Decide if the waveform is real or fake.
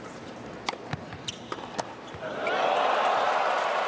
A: real